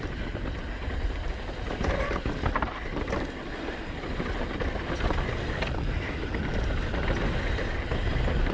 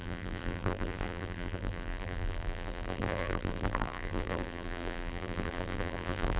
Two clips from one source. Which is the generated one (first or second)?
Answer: second